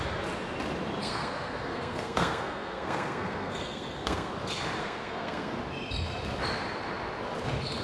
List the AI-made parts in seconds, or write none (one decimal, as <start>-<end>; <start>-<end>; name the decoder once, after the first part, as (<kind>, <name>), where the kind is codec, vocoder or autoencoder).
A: 1.0-4.3 (codec, SNAC); 4.8-5.5